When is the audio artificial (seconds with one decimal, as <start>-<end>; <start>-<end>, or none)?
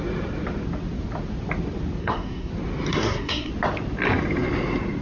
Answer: 2.0-2.5; 2.9-3.5